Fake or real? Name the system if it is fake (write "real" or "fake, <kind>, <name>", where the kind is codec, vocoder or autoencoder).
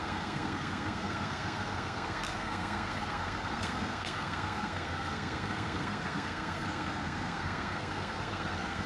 fake, codec, SNAC